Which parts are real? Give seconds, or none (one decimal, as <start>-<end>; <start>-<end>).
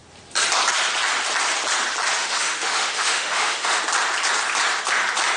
0.0-2.2; 3.8-5.4